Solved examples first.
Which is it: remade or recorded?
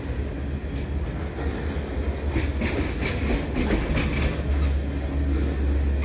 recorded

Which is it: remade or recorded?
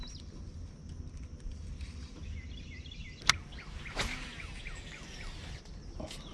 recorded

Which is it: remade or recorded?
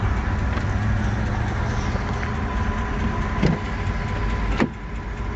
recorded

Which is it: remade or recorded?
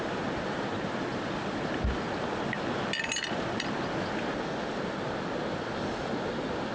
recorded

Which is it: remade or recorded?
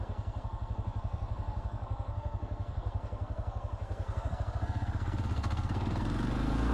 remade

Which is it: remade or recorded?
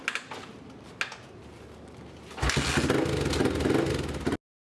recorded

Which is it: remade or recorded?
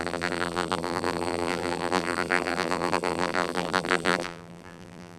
remade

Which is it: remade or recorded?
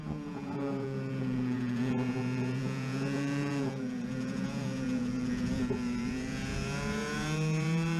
remade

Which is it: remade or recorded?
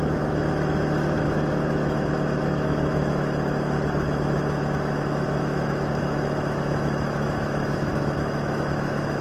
remade